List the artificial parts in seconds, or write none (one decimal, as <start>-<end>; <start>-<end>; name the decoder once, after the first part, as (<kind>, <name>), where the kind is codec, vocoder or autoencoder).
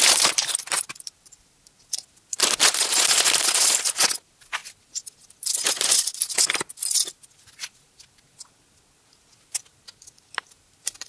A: none